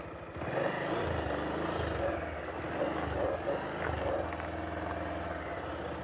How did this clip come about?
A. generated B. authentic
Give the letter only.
B